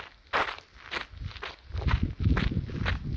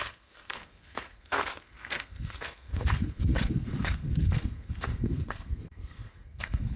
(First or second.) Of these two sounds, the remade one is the second